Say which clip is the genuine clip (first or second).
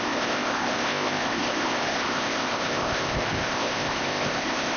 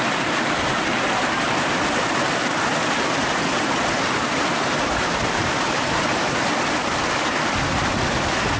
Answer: second